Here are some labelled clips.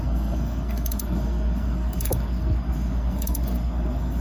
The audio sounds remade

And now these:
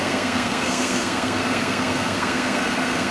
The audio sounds remade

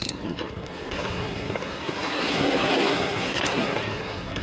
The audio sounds remade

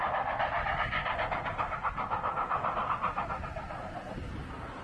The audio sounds recorded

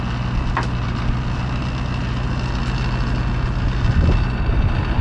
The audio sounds recorded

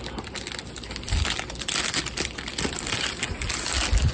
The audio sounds recorded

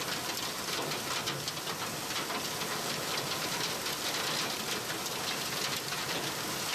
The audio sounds recorded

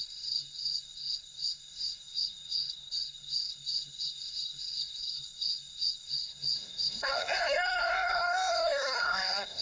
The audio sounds remade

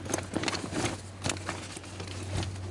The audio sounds recorded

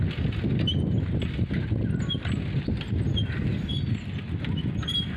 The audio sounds recorded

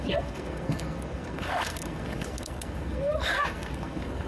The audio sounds remade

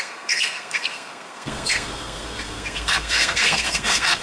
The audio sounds remade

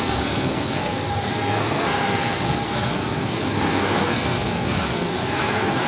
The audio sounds remade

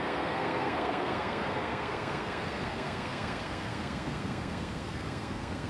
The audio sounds remade